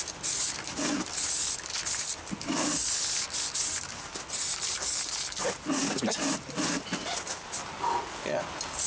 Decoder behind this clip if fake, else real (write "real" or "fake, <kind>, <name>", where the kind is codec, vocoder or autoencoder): real